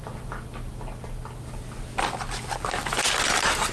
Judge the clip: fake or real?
real